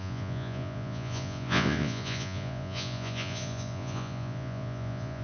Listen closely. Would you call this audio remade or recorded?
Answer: remade